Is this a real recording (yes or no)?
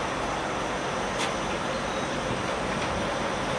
yes